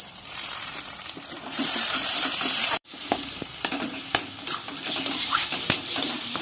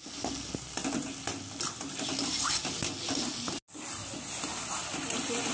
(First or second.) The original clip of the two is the second